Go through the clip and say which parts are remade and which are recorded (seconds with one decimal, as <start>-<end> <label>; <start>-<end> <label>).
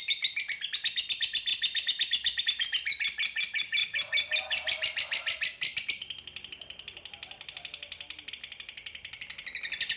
0.0-10.0 recorded